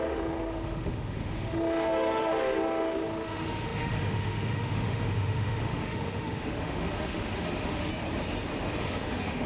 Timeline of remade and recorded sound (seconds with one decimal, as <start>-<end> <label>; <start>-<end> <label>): 0.0-7.9 remade; 7.9-8.8 recorded; 8.8-9.5 remade